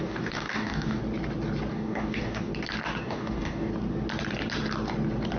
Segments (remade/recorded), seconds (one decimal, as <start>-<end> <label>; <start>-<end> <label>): 0.0-1.0 remade; 1.0-1.7 recorded; 1.7-2.5 remade; 2.5-3.0 recorded; 3.0-3.7 remade; 3.7-5.4 recorded